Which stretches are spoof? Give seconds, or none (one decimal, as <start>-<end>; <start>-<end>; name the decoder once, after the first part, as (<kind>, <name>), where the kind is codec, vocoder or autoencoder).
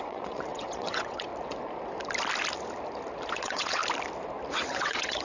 0.0-1.3 (vocoder, WaveNeXt); 3.3-3.8; 4.7-5.2